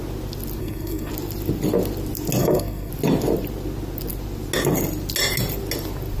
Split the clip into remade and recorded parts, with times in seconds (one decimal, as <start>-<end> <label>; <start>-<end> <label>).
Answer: 0.0-0.6 recorded; 0.6-1.1 remade; 1.1-2.4 recorded; 2.4-2.9 remade; 2.9-6.2 recorded

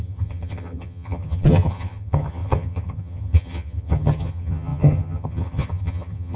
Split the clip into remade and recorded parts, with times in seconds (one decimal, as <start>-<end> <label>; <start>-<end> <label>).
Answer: 0.0-6.4 remade